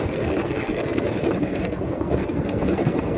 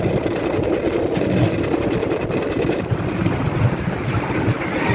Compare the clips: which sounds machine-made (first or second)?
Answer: first